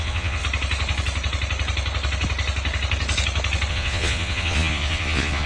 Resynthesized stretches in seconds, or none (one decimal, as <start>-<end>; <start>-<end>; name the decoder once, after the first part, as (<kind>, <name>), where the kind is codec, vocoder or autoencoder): 0.0-0.4 (vocoder, Vocos); 3.7-5.5